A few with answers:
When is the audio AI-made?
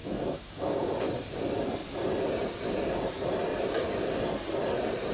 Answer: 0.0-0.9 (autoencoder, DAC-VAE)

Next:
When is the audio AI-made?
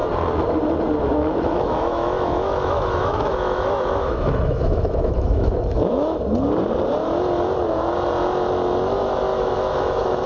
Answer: 1.5-6.2 (autoencoder, DAC-VAE); 9.3-10.3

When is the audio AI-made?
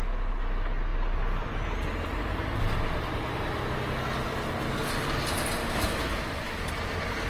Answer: 5.6-6.7 (autoencoder, DAC-VAE)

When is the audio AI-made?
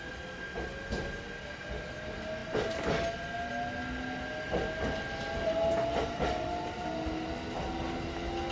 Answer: none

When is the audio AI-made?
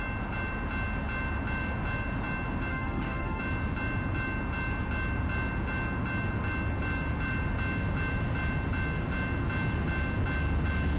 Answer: 2.7-3.4 (autoencoder, DAC-VAE)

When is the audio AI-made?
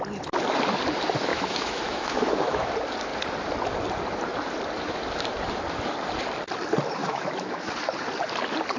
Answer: 1.3-2.7 (autoencoder, DAC-VAE); 7.0-7.7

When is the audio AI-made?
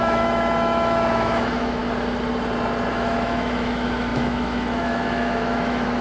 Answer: 0.0-1.8 (autoencoder, DAC-VAE); 2.9-6.0